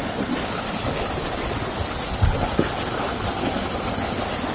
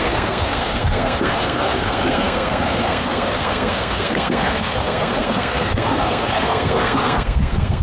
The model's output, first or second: second